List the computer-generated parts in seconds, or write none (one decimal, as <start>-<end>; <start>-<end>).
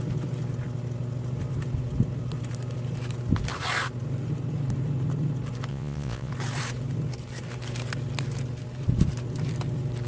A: 5.7-6.3